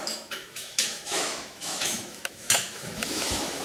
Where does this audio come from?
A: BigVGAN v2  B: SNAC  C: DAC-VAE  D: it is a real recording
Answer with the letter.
C